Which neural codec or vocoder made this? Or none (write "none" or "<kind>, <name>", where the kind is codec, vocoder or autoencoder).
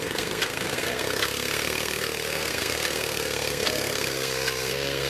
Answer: codec, SNAC